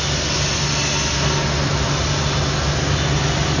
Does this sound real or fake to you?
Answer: real